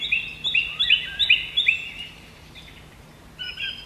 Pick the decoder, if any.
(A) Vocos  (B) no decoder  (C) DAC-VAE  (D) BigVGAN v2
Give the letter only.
B